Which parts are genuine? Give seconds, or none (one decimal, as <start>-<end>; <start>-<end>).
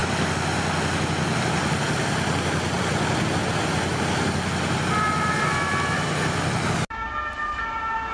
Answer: 0.0-8.1